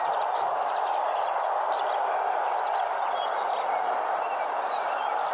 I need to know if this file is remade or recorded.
recorded